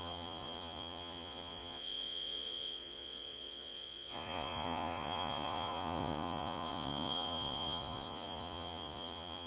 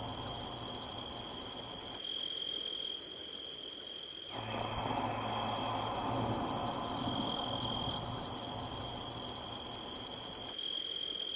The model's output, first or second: first